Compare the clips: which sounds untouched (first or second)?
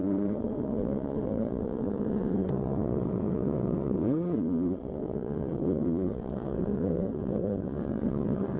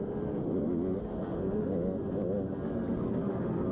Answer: second